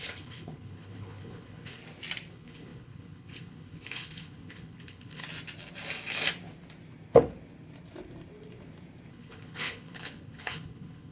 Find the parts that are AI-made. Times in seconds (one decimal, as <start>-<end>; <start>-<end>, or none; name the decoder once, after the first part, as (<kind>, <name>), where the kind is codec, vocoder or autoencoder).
0.0-1.8 (codec, HILCodec); 2.3-5.2; 9.1-11.1